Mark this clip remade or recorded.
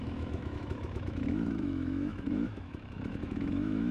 remade